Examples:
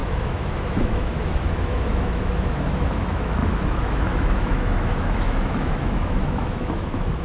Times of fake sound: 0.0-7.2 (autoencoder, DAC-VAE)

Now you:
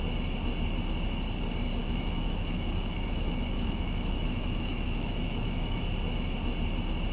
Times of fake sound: 1.8-5.9 (autoencoder, DAC-VAE)

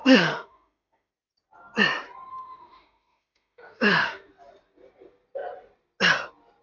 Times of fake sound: 0.0-1.1 (autoencoder, DAC-VAE); 2.3-4.3

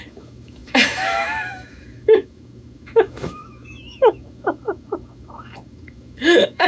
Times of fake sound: 0.0-6.7 (autoencoder, DAC-VAE)